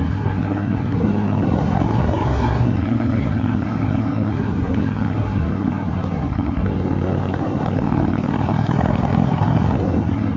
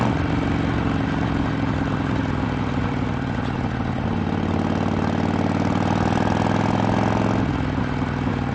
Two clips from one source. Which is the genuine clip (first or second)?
second